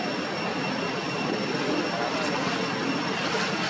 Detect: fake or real real